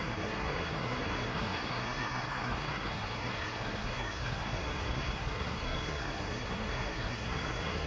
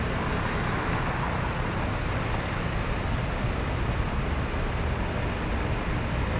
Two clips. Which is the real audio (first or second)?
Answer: second